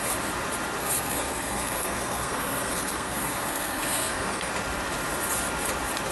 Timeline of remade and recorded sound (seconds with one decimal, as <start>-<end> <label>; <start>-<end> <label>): 0.0-0.8 recorded; 0.8-4.5 remade; 4.5-6.1 recorded

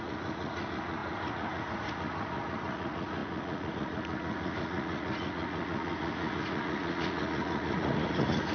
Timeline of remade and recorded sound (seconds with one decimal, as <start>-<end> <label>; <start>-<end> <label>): 0.0-8.5 remade

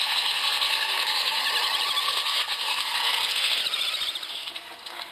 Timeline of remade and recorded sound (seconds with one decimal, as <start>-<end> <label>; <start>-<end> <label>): 0.0-1.4 remade; 1.4-2.0 recorded; 2.0-3.6 remade; 3.6-4.3 recorded; 4.3-5.1 remade

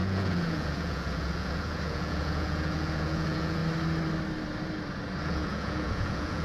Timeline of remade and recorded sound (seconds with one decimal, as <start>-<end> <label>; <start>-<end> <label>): 0.0-3.6 remade; 3.6-5.2 recorded; 5.2-6.4 remade

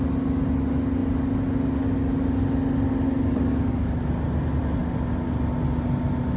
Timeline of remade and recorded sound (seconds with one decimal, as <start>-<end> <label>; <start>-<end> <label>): 0.0-6.4 recorded